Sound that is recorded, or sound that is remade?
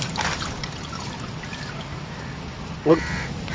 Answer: recorded